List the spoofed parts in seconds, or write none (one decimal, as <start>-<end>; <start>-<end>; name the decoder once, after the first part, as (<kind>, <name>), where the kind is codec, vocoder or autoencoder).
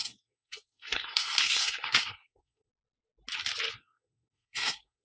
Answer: 0.0-2.7 (codec, SNAC); 3.7-5.0